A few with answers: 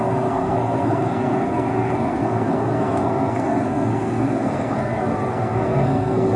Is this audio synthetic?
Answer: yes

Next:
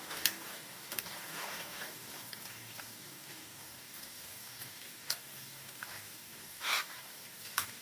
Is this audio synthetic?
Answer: yes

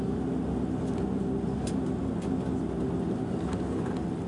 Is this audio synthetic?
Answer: no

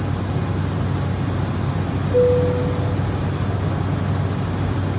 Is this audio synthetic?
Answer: no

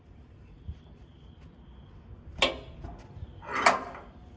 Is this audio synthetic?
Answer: no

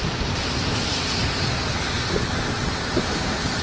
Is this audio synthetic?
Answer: no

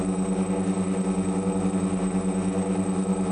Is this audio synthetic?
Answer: no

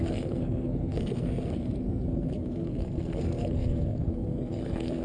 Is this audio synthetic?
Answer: yes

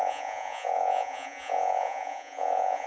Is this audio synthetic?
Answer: yes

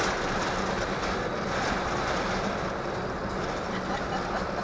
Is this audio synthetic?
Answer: no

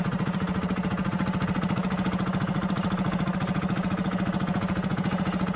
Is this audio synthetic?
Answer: no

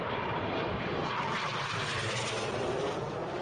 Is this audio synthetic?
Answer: no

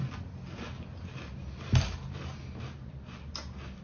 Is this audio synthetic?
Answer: no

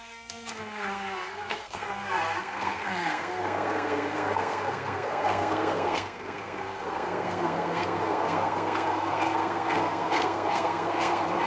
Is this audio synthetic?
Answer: yes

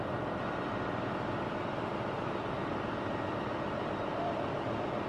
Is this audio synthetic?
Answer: yes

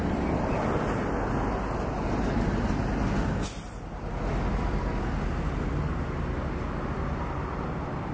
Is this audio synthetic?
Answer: no